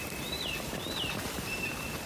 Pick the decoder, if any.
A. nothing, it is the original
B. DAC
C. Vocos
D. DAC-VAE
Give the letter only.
A